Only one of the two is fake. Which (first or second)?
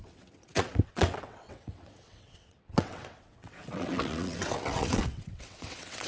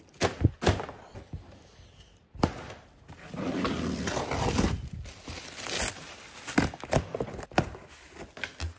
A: first